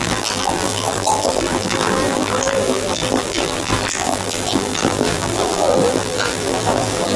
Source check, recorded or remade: remade